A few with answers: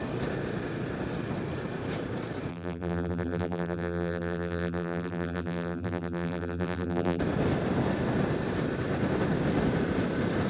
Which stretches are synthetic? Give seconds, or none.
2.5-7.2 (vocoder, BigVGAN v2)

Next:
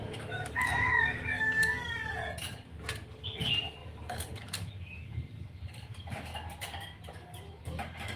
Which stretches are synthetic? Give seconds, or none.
0.0-2.2 (codec, DAC); 3.1-6.3; 7.1-8.2

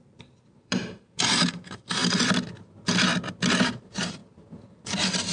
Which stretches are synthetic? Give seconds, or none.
0.0-2.0 (vocoder, BigVGAN v2); 3.6-4.2

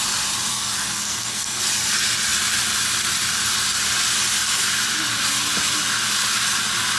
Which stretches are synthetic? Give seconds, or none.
0.5-1.7 (codec, SNAC)

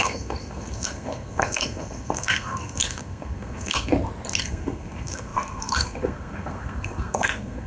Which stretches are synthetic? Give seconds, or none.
0.0-3.9 (codec, SNAC); 4.4-7.7

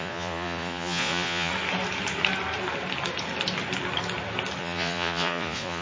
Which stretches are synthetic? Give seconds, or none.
0.0-1.5 (vocoder, Vocos); 4.6-5.8

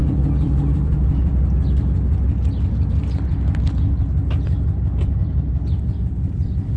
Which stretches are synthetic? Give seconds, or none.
0.0-3.0 (vocoder, BigVGAN v2); 5.2-6.8